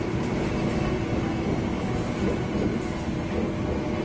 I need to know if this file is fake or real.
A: real